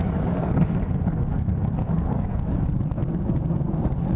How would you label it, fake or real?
fake